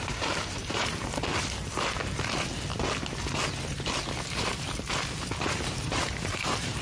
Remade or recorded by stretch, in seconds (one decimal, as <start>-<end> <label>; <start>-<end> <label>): 0.0-1.3 remade; 1.3-5.4 recorded; 5.4-6.8 remade